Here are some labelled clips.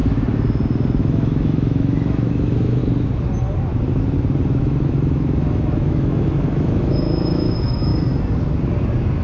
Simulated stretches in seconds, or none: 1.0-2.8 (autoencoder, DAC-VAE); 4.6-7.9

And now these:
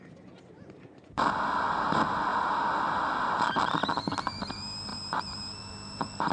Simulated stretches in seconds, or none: none

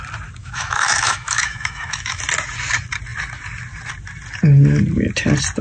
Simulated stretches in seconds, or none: 0.4-2.2 (autoencoder, DAC-VAE)

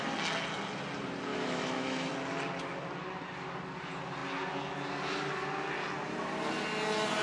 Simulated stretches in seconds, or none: 1.3-2.1 (autoencoder, DAC-VAE)

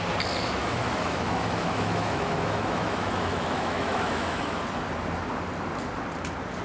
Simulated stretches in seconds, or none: 0.6-4.6 (autoencoder, DAC-VAE)

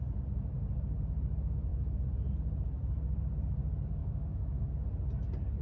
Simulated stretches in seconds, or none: 4.0-4.7 (autoencoder, DAC-VAE)

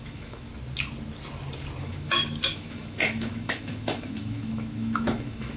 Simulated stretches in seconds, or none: 0.0-0.5 (autoencoder, DAC-VAE); 1.8-5.6